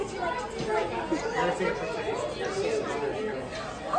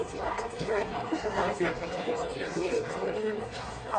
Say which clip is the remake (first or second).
second